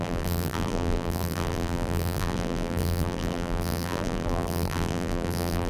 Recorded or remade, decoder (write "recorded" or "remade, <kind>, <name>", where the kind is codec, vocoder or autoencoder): remade, vocoder, BigVGAN v2